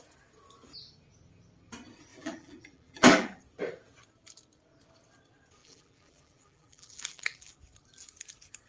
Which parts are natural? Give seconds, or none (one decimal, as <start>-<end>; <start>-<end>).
0.0-2.1; 3.4-5.6; 7.5-8.7